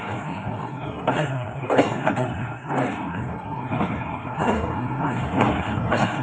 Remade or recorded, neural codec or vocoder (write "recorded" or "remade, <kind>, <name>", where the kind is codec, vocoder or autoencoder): remade, codec, SNAC